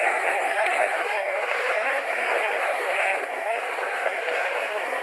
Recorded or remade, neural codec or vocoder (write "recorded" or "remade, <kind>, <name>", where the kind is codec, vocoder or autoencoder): remade, codec, SNAC